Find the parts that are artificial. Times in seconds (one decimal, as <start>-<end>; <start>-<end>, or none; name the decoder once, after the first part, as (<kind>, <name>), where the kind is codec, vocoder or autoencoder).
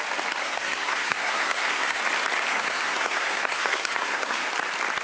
0.4-2.0 (codec, SNAC); 2.5-4.5